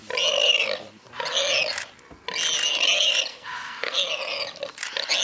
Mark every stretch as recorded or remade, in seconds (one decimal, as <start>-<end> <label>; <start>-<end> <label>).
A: 0.0-3.3 recorded; 3.3-4.0 remade; 4.0-5.2 recorded